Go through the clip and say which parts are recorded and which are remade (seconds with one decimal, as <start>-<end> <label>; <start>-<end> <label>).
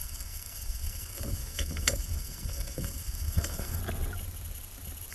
0.0-3.8 remade; 3.8-5.1 recorded